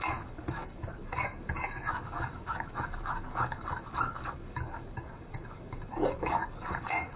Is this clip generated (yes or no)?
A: yes